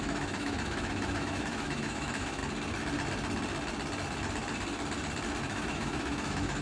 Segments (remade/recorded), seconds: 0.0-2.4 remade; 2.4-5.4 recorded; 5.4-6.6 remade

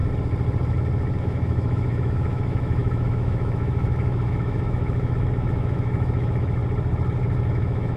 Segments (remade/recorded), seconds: 0.0-1.2 recorded; 1.2-6.6 remade; 6.6-7.5 recorded; 7.5-8.0 remade

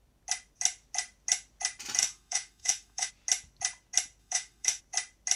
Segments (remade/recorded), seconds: 0.0-2.0 recorded; 2.0-3.1 remade; 3.1-4.2 recorded; 4.2-4.8 remade; 4.8-5.4 recorded

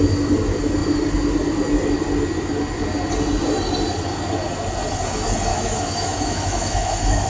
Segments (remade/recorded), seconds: 0.0-5.5 recorded; 5.5-7.3 remade

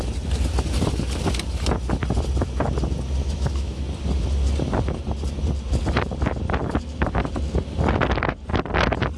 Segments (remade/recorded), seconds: 0.0-3.2 recorded; 3.2-3.8 remade; 3.8-9.2 recorded

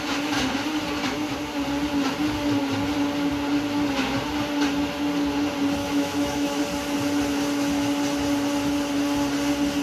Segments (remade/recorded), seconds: 0.0-5.8 recorded; 5.8-6.6 remade; 6.6-9.8 recorded

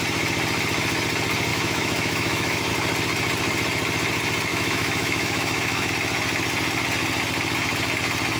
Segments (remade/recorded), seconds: 0.0-1.5 recorded; 1.5-2.7 remade; 2.7-4.5 recorded; 4.5-5.9 remade; 5.9-8.4 recorded